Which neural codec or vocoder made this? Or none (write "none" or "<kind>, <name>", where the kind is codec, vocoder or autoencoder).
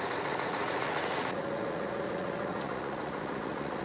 vocoder, Vocos